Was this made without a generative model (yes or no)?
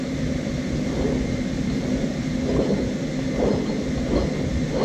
yes